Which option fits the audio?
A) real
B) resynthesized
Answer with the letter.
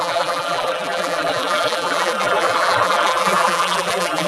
B